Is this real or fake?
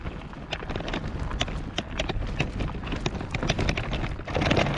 real